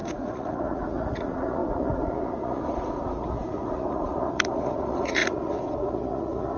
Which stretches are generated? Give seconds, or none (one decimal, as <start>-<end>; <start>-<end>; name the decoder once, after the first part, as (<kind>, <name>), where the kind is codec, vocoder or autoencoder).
0.0-6.6 (vocoder, Vocos)